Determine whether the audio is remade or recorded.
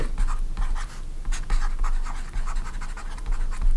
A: recorded